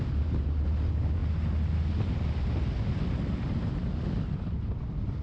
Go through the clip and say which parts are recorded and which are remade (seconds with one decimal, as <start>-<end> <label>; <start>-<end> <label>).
0.0-5.2 recorded